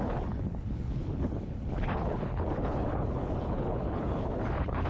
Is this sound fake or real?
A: fake